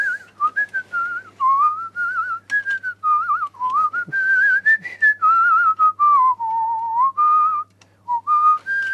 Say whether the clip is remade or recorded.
recorded